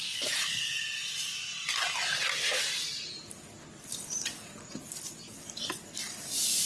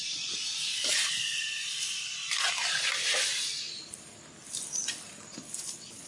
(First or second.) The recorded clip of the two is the first